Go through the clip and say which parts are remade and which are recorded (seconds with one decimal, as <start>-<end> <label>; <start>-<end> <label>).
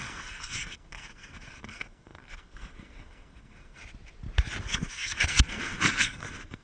0.0-3.8 remade; 3.8-4.6 recorded; 4.6-6.6 remade